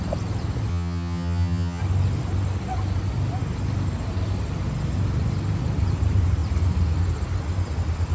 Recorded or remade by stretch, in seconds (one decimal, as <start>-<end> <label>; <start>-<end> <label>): 0.0-0.7 recorded; 0.7-1.8 remade; 1.8-8.1 recorded